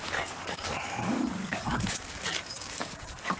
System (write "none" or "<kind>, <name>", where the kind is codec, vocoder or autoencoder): codec, DAC